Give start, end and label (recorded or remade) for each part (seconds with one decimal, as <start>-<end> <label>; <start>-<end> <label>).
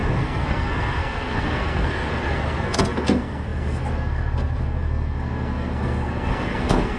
0.0-7.0 remade